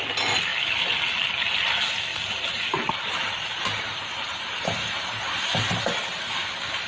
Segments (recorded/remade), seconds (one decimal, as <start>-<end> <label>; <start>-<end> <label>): 0.0-2.1 recorded; 2.1-5.4 remade; 5.4-6.9 recorded